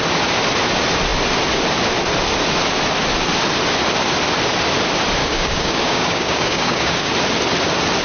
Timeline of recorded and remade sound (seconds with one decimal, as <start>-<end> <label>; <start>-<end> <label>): 0.0-5.2 recorded; 5.2-7.1 remade; 7.1-8.0 recorded